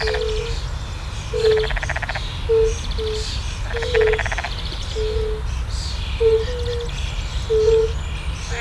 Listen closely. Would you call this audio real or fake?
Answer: real